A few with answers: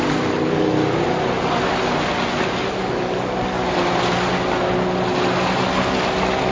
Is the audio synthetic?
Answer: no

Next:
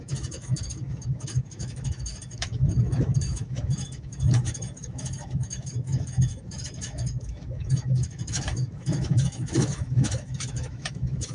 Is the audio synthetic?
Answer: yes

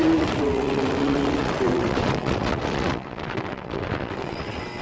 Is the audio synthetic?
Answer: yes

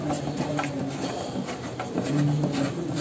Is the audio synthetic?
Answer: no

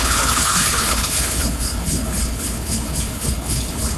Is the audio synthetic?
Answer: yes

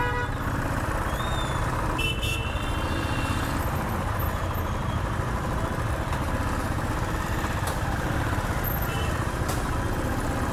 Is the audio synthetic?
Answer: no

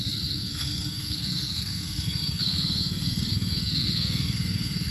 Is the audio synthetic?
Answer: yes